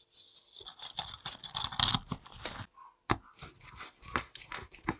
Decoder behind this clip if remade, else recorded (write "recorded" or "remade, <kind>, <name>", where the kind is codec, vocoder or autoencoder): recorded